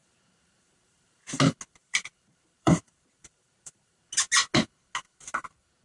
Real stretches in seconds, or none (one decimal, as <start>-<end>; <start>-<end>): 1.4-1.8; 4.1-5.8